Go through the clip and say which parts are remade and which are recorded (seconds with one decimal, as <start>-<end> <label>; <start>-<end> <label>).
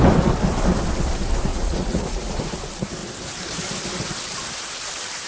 0.0-1.5 recorded; 1.5-2.4 remade; 2.4-5.3 recorded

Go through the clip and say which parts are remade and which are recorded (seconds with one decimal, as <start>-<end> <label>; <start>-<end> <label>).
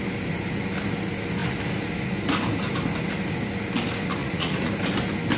0.0-4.2 recorded; 4.2-4.7 remade; 4.7-5.4 recorded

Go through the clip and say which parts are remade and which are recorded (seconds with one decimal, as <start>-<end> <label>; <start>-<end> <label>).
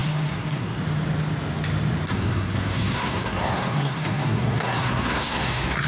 0.0-0.8 remade; 0.8-2.1 recorded; 2.1-5.9 remade